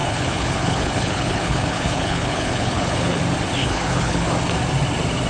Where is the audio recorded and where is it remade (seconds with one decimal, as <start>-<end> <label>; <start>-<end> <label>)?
0.0-3.2 remade; 3.2-3.6 recorded; 3.6-4.3 remade; 4.3-5.3 recorded